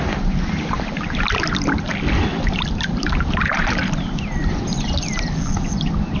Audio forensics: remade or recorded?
recorded